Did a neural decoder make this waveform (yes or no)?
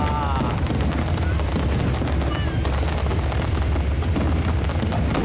no